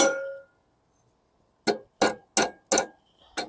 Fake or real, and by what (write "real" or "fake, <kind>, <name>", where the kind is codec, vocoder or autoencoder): real